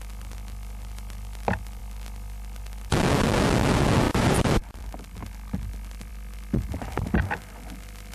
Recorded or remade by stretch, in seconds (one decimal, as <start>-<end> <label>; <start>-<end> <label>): 0.0-8.1 recorded

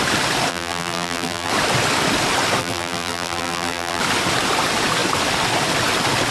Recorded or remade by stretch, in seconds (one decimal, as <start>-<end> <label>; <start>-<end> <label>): 0.0-0.5 recorded; 0.5-1.5 remade; 1.5-2.6 recorded; 2.6-4.0 remade; 4.0-6.3 recorded

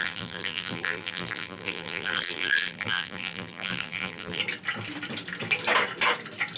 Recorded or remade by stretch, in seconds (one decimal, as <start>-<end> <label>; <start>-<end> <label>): 0.0-4.4 remade; 4.4-6.6 recorded

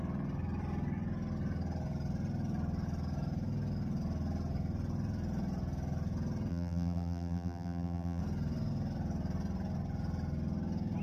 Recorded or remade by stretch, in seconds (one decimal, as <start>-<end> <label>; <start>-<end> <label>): 0.0-6.5 recorded; 6.5-8.2 remade; 8.2-11.0 recorded

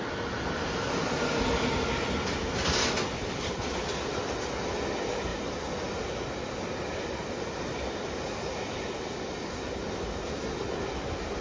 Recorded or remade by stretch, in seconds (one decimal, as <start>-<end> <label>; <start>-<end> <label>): 0.0-11.4 recorded